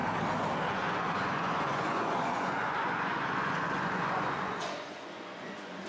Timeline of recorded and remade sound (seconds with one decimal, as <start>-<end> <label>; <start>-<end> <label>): 0.0-0.7 recorded; 0.7-5.9 remade